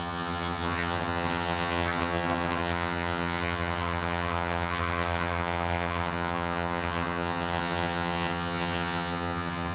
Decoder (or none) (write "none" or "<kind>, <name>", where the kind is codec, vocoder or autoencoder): vocoder, HiFi-GAN